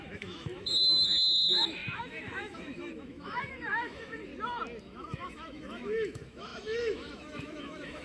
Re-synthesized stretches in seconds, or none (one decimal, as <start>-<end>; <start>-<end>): 0.0-4.3; 4.8-8.0